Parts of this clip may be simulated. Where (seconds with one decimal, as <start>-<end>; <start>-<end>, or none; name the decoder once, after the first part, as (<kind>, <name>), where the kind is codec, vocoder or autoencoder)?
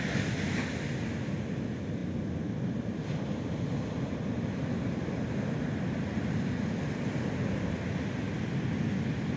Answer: none